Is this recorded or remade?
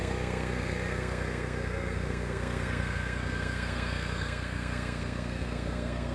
remade